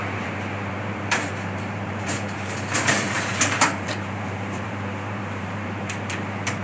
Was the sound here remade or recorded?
remade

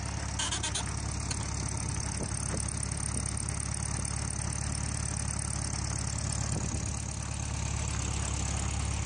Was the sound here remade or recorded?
recorded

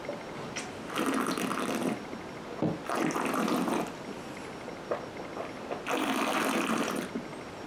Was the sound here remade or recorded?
recorded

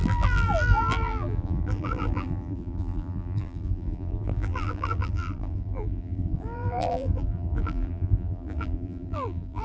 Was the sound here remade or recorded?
remade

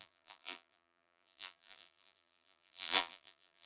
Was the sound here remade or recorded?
remade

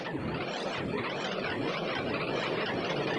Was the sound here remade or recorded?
recorded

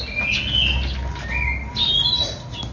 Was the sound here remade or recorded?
recorded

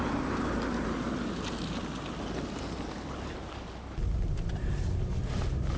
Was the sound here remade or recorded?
recorded